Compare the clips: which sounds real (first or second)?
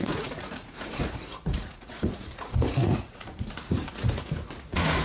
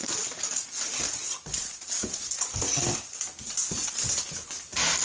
second